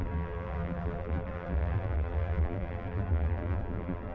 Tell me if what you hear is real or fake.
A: fake